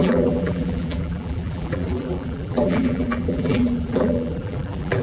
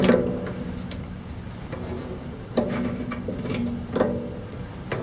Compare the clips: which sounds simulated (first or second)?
first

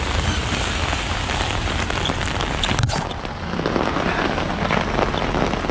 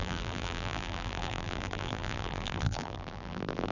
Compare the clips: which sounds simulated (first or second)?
second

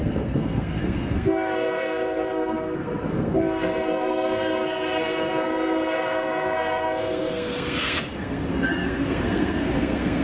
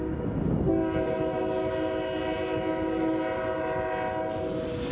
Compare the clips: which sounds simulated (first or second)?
first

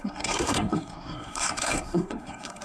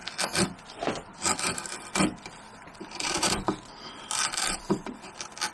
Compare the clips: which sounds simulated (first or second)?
first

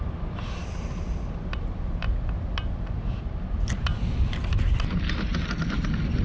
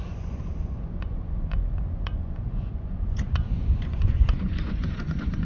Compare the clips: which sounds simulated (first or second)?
second